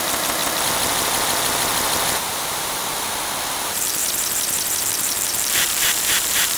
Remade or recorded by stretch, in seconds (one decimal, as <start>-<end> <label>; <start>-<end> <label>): 0.0-0.4 remade; 0.4-2.2 recorded; 2.2-2.8 remade; 2.8-3.6 recorded; 3.6-4.0 remade; 4.0-4.8 recorded; 4.8-6.6 remade